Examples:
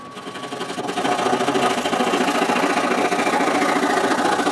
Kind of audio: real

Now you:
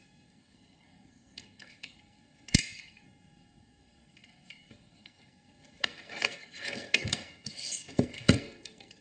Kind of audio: fake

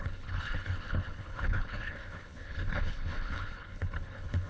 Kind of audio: fake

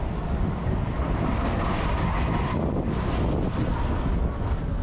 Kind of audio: real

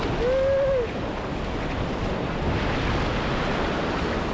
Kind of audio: real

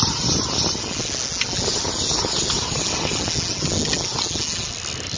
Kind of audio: real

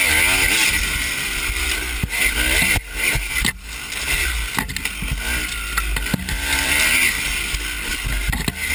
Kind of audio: real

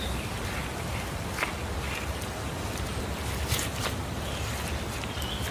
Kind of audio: real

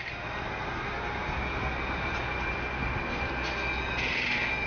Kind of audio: real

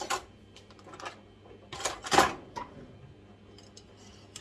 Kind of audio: real